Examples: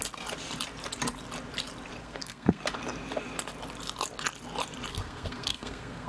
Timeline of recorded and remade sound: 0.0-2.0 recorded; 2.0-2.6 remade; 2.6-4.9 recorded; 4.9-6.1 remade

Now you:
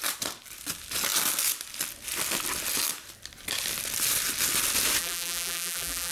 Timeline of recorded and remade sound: 0.0-5.0 recorded; 5.0-6.1 remade

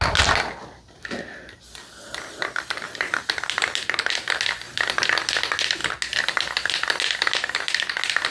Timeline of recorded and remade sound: 0.0-8.3 recorded

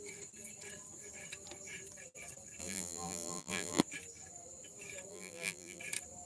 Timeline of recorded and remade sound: 0.0-2.6 recorded; 2.6-3.8 remade; 3.8-5.1 recorded; 5.1-5.8 remade; 5.8-6.3 recorded

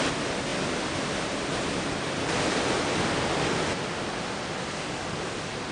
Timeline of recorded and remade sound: 0.0-5.7 recorded

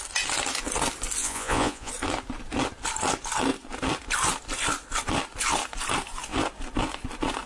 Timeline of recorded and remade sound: 0.0-1.2 recorded; 1.2-1.9 remade; 1.9-7.5 recorded